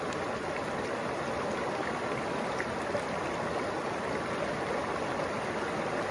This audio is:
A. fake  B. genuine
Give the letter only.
B